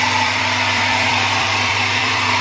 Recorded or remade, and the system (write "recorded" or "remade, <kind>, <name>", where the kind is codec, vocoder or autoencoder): remade, vocoder, BigVGAN v2